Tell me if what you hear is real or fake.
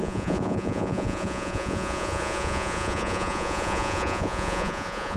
fake